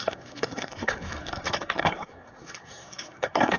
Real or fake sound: fake